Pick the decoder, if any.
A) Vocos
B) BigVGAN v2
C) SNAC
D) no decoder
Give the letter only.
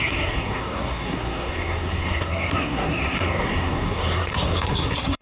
C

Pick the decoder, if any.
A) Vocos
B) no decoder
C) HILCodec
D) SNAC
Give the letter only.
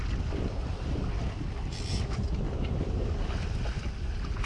B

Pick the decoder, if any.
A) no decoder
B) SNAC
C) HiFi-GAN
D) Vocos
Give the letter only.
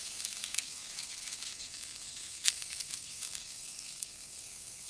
B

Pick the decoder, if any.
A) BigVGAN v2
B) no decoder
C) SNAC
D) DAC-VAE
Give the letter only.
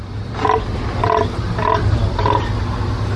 B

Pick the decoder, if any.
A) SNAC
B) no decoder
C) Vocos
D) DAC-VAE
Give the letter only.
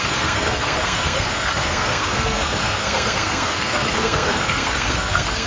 A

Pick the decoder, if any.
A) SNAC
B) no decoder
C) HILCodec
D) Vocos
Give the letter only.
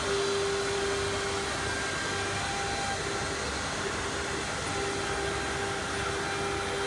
B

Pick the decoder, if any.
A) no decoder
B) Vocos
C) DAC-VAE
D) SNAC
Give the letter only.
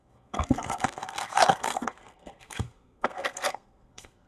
D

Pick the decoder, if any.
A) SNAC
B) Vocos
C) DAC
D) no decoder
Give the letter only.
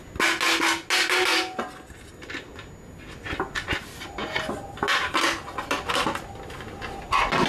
D